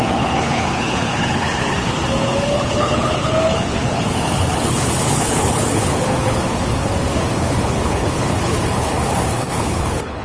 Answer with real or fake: fake